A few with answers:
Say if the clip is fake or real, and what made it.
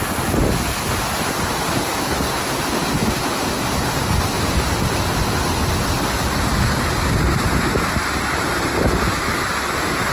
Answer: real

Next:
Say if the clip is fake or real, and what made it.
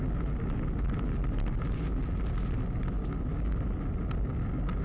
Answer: real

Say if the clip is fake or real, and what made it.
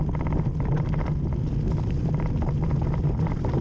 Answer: real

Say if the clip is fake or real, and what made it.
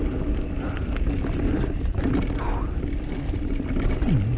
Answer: real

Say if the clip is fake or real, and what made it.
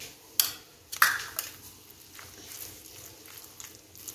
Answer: real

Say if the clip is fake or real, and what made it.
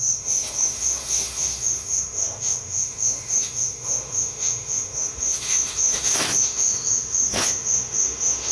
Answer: fake, autoencoder, DAC-VAE